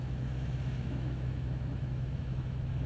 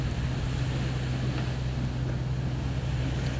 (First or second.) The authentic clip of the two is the second